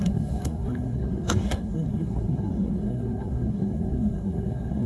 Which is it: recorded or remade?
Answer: remade